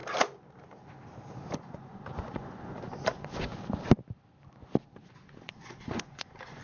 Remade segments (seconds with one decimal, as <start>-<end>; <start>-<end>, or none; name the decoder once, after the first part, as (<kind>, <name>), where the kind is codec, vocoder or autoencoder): 1.6-3.5 (vocoder, Vocos); 5.1-6.6